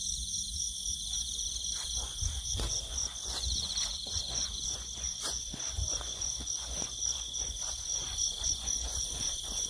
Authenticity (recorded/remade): remade